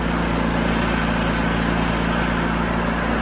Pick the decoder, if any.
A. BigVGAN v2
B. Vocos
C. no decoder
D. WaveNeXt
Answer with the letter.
C